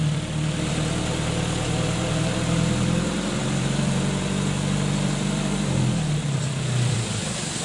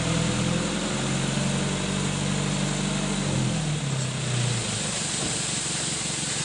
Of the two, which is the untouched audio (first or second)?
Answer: second